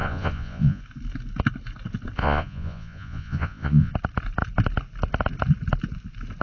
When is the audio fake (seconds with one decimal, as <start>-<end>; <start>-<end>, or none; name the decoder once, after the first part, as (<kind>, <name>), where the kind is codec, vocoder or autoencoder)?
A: 0.0-0.8 (vocoder, Vocos); 2.2-3.9